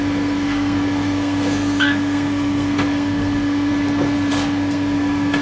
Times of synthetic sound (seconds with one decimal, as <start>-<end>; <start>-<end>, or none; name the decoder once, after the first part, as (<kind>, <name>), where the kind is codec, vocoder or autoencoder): 0.0-3.7 (codec, SNAC); 4.3-5.4